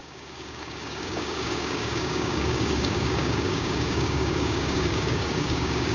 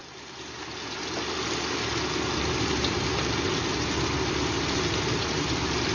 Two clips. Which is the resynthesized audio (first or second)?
first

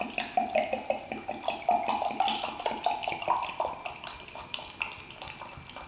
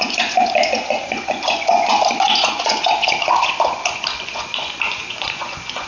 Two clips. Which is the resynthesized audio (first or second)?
second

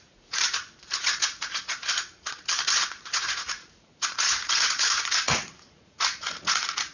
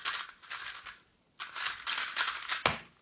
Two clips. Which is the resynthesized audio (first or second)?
first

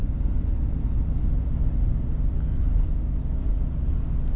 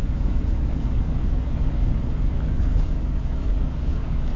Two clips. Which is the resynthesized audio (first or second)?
second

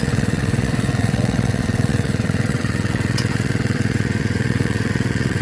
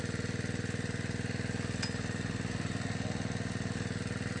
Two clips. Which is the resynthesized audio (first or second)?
first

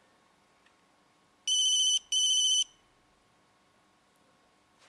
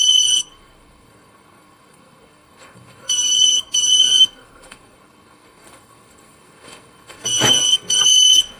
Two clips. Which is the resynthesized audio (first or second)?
second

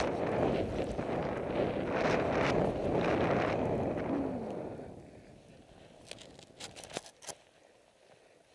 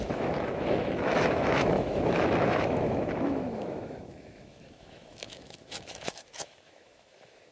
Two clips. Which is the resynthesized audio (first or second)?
second